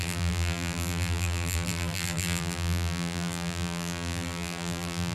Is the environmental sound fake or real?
fake